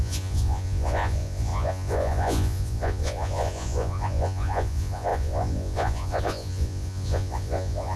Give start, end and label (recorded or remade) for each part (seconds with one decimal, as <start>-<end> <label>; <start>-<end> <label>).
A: 0.0-8.0 remade